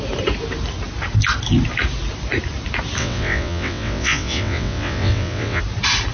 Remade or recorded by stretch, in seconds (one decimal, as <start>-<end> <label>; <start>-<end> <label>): 0.0-3.0 recorded; 3.0-5.6 remade; 5.6-6.1 recorded